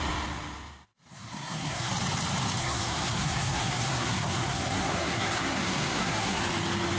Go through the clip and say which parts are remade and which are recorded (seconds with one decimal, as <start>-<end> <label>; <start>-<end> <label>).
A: 0.0-1.1 recorded; 1.1-1.9 remade; 1.9-2.6 recorded; 2.6-6.4 remade; 6.4-7.0 recorded